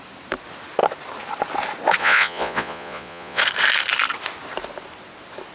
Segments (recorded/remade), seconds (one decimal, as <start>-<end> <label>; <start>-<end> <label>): 0.0-2.0 recorded; 2.0-3.4 remade; 3.4-5.5 recorded